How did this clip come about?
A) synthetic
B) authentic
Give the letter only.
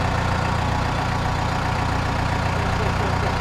B